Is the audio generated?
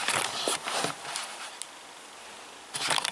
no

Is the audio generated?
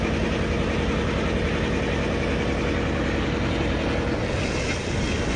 no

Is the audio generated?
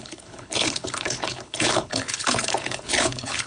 yes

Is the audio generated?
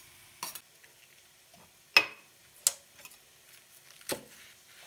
no